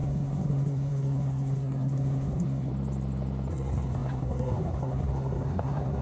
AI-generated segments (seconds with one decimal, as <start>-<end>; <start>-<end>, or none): 0.0-2.7; 3.5-6.0